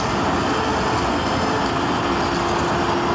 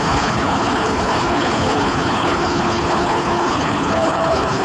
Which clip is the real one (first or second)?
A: first